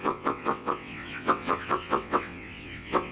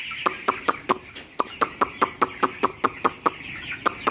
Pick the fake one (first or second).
first